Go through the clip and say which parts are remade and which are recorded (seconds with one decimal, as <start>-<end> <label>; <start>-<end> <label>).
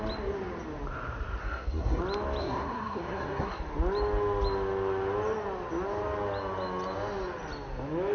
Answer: 0.0-1.4 recorded; 1.4-2.0 remade; 2.0-2.4 recorded; 2.4-3.6 remade; 3.6-8.1 recorded